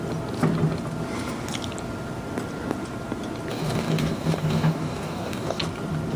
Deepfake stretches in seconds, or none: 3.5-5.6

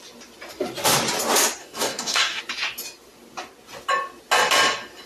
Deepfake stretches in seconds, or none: 1.6-2.4

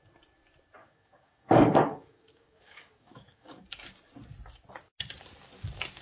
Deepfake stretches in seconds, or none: 0.8-3.6

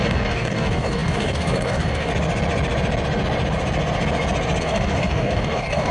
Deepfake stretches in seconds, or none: 0.0-2.1; 4.6-5.9

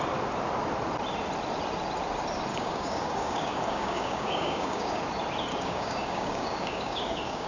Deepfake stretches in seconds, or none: 2.5-5.0; 5.5-7.5

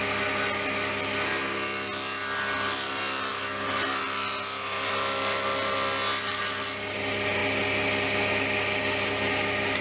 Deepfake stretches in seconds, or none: none

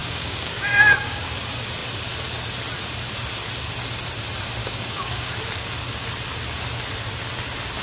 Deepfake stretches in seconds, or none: 0.0-1.3; 4.6-5.3

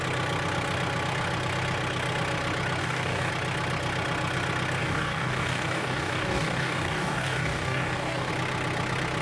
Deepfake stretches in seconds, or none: 2.8-3.3; 4.8-8.3